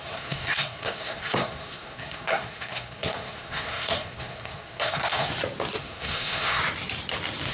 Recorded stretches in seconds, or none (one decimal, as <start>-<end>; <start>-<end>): 5.3-5.8; 6.6-7.5